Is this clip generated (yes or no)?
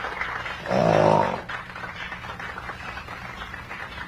yes